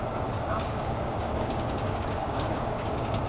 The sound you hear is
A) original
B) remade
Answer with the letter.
B